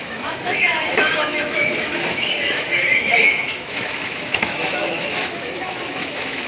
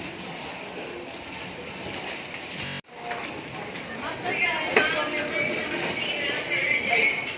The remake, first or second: first